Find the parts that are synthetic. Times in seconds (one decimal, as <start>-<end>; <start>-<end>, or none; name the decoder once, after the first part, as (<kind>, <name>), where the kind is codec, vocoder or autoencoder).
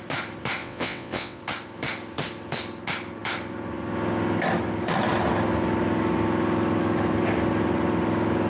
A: 0.6-1.4 (vocoder, WaveNeXt)